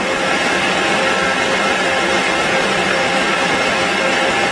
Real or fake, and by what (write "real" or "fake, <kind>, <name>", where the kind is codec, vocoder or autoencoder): real